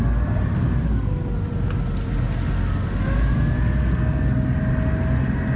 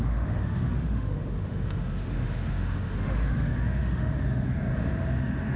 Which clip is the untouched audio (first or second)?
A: first